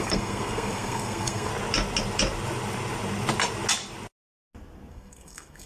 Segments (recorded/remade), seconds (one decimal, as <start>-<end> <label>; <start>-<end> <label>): 0.0-1.5 remade; 1.5-4.9 recorded; 4.9-5.7 remade